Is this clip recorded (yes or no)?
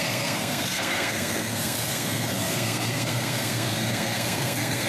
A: no